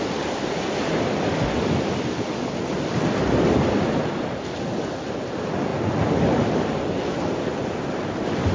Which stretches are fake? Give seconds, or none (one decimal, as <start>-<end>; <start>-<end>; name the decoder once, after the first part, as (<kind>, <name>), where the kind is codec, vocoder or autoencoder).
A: none